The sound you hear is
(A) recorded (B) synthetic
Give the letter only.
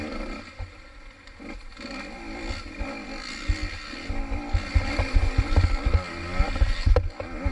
A